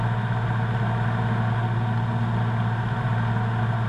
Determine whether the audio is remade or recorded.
recorded